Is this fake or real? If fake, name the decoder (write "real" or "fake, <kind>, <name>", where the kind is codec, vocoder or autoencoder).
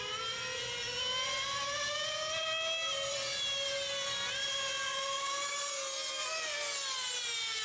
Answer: real